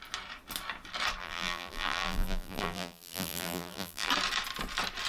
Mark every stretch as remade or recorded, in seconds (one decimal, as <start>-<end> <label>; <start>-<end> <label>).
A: 0.0-1.2 recorded; 1.2-4.1 remade; 4.1-5.1 recorded